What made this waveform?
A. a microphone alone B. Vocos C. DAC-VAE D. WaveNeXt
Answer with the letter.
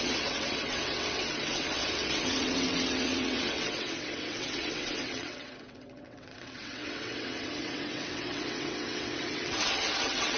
D